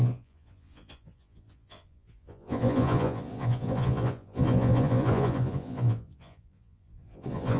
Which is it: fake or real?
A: fake